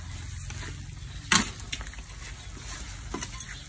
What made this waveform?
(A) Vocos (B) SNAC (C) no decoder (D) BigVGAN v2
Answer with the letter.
C